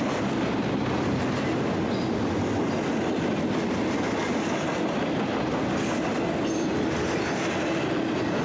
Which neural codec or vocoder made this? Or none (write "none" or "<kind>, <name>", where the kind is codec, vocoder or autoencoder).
none